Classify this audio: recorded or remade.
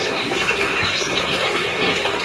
remade